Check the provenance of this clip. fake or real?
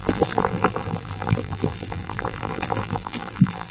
fake